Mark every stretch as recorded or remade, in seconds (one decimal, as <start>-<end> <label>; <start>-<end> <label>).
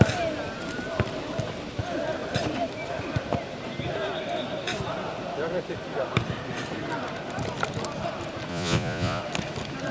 0.0-8.5 recorded; 8.5-9.2 remade; 9.2-9.9 recorded